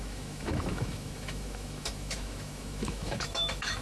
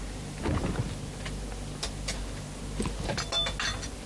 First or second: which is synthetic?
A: first